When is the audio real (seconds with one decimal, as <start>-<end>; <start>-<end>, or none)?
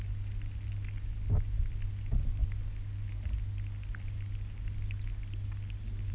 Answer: 0.0-6.1